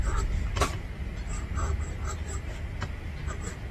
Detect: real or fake real